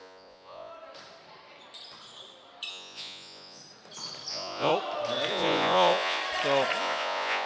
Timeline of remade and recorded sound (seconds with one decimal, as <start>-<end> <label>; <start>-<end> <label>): 0.0-0.7 remade; 0.7-2.7 recorded; 2.7-3.6 remade; 3.6-4.3 recorded; 4.3-4.7 remade; 4.7-5.3 recorded; 5.3-6.2 remade; 6.2-6.8 recorded; 6.8-7.5 remade